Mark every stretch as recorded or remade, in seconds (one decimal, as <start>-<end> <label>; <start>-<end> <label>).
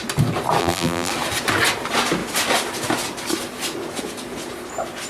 0.0-0.6 recorded; 0.6-1.1 remade; 1.1-5.1 recorded